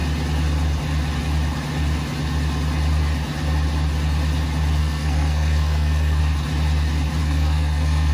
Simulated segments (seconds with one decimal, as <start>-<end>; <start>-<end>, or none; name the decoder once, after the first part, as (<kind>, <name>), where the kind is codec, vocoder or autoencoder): 4.8-6.2 (codec, SNAC); 7.2-8.1